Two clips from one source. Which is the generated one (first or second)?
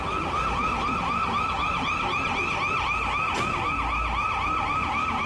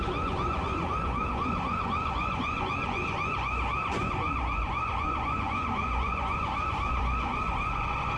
second